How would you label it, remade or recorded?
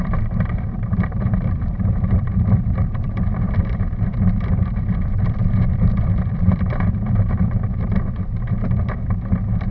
remade